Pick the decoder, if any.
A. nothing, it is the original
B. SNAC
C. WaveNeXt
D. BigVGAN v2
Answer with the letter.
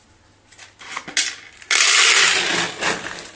A